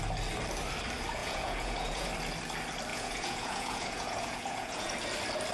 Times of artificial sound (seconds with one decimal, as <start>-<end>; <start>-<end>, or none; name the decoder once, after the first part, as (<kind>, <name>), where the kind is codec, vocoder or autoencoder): 1.2-2.1 (vocoder, Vocos); 2.9-4.9